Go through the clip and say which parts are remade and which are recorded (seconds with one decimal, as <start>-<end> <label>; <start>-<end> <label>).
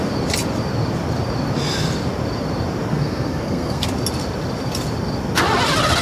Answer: 0.0-2.9 recorded; 2.9-3.9 remade; 3.9-6.0 recorded